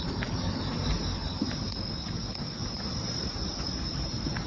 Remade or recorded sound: recorded